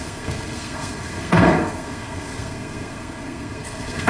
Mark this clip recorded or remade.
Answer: remade